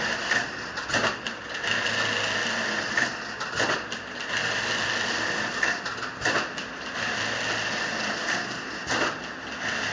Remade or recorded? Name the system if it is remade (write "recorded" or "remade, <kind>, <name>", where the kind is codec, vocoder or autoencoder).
recorded